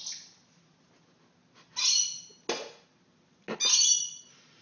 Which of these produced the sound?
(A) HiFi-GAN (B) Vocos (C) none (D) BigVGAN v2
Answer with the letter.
C